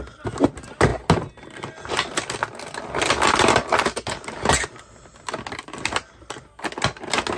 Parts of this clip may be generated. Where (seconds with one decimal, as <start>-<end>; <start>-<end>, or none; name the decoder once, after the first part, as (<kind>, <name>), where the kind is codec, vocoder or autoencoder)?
none